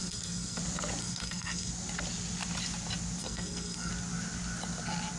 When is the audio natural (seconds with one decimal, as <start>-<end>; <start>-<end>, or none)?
0.6-1.0; 1.7-3.2; 3.9-5.2